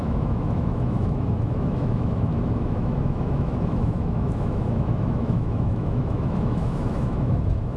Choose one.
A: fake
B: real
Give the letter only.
A